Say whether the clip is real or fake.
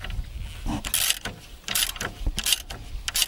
real